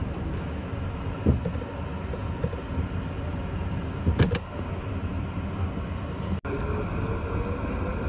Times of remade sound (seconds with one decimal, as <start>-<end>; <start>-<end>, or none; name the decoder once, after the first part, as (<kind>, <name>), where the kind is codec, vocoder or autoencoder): 0.0-0.7 (autoencoder, DAC-VAE)

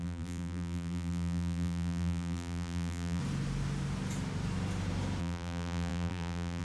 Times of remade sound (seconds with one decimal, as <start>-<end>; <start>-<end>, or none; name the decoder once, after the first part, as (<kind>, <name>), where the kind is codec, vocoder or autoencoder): 0.0-3.2 (vocoder, BigVGAN v2); 5.2-6.6

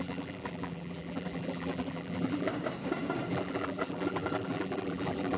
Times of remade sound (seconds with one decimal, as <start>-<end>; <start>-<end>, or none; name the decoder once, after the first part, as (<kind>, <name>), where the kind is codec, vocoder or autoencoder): 0.0-2.5 (vocoder, BigVGAN v2); 3.3-5.4

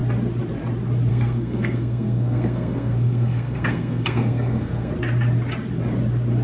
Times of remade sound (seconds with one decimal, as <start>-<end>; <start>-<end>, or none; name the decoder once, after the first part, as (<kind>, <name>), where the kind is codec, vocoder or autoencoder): 1.1-4.9 (codec, SNAC)

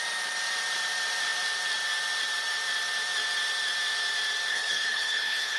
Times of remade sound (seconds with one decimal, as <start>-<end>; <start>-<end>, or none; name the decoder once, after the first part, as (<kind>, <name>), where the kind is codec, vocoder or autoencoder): 4.5-5.6 (codec, HILCodec)

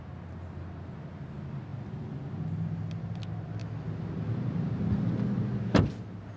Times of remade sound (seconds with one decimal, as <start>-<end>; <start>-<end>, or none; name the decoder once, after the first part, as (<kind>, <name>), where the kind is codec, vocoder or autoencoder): none

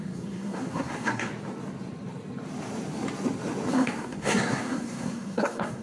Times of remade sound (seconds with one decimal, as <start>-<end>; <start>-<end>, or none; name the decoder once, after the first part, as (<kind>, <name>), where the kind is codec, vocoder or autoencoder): 0.0-1.3 (codec, SNAC); 3.7-5.8